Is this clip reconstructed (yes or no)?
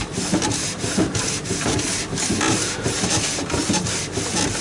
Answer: no